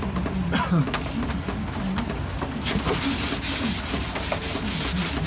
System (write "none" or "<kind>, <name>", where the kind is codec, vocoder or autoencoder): none